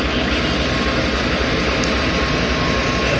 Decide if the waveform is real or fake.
real